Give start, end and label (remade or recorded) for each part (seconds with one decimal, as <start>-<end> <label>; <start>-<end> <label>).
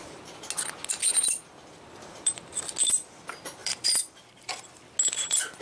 0.0-1.1 recorded; 1.1-2.3 remade; 2.3-3.6 recorded; 3.6-4.8 remade; 4.8-5.6 recorded